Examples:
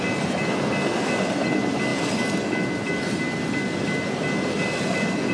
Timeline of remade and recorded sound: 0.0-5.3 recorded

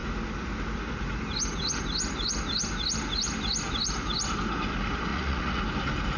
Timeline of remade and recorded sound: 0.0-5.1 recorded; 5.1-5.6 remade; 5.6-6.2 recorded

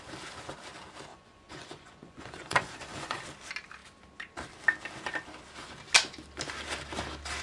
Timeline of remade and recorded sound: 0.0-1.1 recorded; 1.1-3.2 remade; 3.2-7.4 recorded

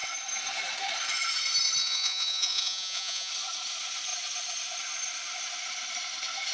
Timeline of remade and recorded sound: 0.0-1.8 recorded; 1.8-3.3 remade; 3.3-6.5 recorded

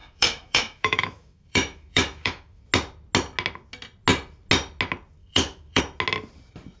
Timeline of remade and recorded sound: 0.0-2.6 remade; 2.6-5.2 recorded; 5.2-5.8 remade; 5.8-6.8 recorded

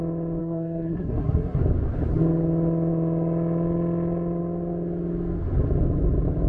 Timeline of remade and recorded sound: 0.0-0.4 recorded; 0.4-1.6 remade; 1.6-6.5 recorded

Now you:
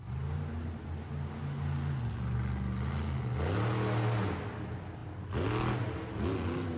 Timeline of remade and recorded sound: 0.0-6.8 recorded